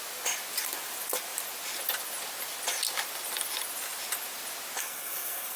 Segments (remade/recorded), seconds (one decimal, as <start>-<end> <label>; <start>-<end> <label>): 0.0-4.8 recorded; 4.8-5.6 remade